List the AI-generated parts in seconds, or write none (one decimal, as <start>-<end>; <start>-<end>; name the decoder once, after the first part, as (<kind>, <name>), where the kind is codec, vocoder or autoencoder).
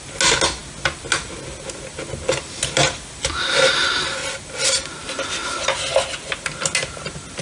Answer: none